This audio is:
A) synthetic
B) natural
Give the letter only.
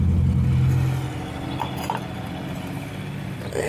B